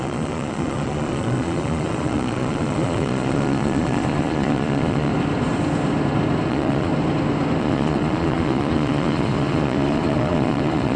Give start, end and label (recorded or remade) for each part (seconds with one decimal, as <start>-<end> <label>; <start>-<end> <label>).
0.0-5.1 remade; 5.1-6.5 recorded; 6.5-6.9 remade; 6.9-7.6 recorded; 7.6-11.0 remade